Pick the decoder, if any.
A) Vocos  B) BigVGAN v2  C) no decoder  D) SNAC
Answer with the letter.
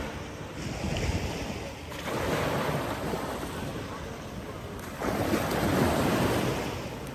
C